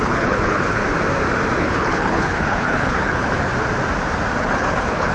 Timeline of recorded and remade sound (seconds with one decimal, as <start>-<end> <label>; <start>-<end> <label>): 0.0-0.8 remade; 0.8-1.6 recorded; 1.6-3.5 remade; 3.5-4.4 recorded; 4.4-5.1 remade